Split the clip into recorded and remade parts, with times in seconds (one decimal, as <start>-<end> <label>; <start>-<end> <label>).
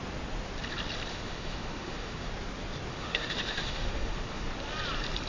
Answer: 0.0-1.1 recorded; 1.1-2.3 remade; 2.3-2.9 recorded; 2.9-4.5 remade; 4.5-5.3 recorded